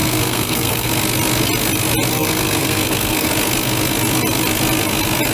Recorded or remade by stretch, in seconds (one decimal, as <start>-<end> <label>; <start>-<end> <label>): 0.0-0.9 remade; 0.9-2.1 recorded; 2.1-3.3 remade; 3.3-5.3 recorded

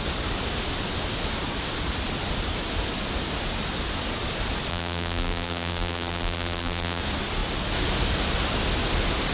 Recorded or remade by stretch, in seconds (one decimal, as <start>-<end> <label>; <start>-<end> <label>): 0.0-4.7 recorded; 4.7-7.0 remade; 7.0-9.3 recorded

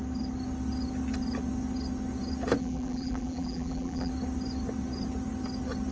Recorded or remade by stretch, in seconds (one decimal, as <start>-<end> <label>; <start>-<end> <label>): 0.0-2.6 recorded; 2.6-4.1 remade; 4.1-5.9 recorded

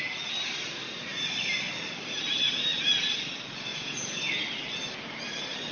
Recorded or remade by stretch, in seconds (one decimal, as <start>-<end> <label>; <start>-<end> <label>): 0.0-3.7 recorded; 3.7-4.2 remade; 4.2-5.7 recorded